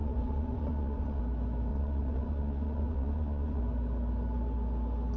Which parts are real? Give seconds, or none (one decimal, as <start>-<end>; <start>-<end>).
1.2-1.7; 3.6-5.2